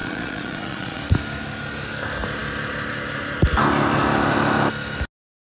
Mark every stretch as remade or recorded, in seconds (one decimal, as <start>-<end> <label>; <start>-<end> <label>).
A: 0.0-1.0 remade; 1.0-5.6 recorded